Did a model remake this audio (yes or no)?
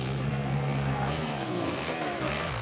yes